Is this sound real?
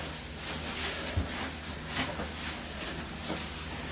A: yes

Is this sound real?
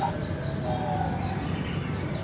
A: yes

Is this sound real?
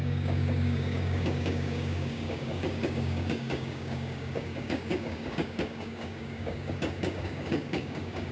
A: no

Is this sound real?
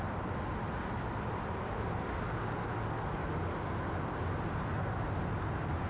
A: yes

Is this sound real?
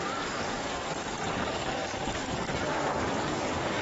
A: no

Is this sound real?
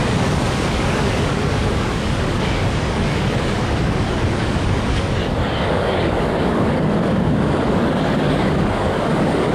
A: no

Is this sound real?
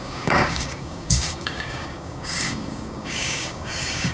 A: no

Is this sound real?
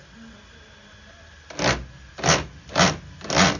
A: yes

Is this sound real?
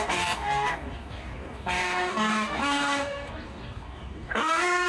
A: no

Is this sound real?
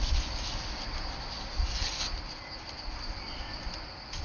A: yes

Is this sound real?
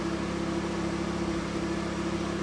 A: yes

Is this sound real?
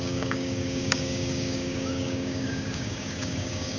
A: no